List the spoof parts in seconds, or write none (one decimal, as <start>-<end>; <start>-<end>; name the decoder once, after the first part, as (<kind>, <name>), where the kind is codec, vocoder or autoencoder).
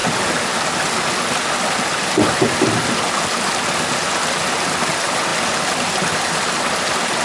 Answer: none